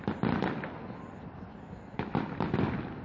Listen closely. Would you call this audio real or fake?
real